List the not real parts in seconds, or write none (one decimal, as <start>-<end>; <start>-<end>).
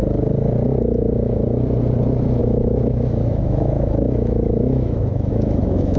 2.4-6.0